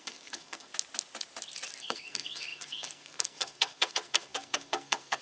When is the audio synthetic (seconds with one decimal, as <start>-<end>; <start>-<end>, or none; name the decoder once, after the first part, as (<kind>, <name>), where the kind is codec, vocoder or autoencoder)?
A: 0.0-0.7 (codec, SNAC); 1.8-5.2